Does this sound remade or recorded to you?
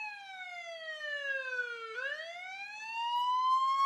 recorded